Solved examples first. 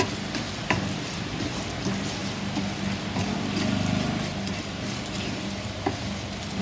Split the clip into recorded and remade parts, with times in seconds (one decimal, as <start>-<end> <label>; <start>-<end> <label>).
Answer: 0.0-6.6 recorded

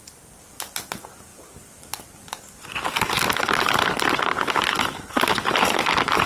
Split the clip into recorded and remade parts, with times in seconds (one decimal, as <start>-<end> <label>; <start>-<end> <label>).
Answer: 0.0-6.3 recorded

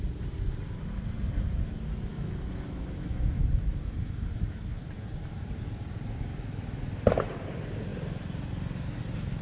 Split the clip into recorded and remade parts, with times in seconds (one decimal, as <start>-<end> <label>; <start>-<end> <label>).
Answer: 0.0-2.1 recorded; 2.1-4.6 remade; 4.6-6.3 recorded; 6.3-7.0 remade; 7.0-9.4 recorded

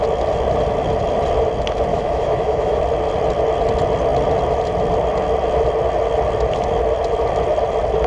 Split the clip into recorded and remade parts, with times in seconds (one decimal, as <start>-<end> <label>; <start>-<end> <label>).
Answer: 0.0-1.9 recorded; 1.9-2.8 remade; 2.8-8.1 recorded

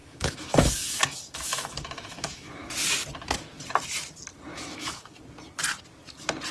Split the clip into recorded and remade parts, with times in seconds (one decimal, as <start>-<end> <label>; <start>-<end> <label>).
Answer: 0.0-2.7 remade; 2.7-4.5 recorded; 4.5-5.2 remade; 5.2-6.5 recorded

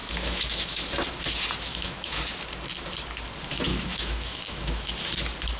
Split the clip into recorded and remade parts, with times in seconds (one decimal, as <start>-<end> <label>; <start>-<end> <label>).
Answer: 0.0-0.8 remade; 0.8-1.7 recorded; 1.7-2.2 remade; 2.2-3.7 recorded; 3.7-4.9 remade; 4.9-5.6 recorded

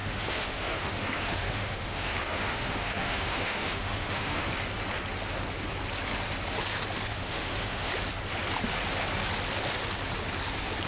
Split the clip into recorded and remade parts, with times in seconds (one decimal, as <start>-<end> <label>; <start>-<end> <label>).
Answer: 0.0-4.5 remade; 4.5-7.1 recorded; 7.1-7.9 remade; 7.9-10.9 recorded